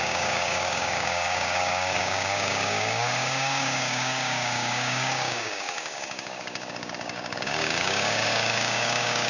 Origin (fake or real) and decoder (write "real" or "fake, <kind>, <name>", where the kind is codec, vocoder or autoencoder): fake, codec, DAC